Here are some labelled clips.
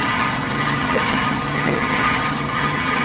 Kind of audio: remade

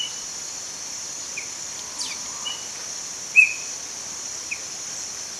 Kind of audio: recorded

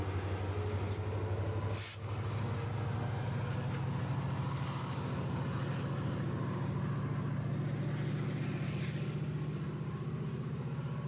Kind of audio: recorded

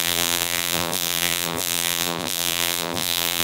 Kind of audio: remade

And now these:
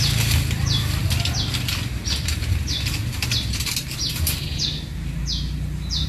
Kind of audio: recorded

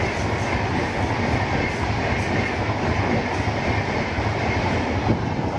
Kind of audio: recorded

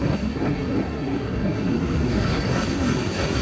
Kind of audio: remade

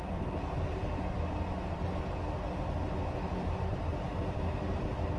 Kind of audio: recorded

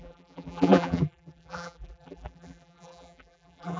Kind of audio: remade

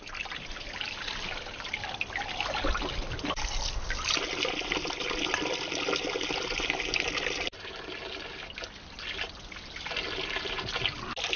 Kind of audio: recorded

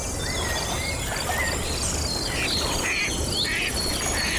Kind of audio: recorded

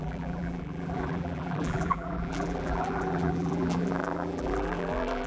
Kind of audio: remade